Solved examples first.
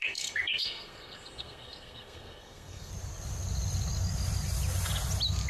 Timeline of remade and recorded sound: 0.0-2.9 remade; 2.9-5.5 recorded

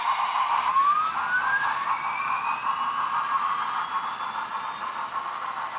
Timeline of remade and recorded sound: 0.0-5.8 recorded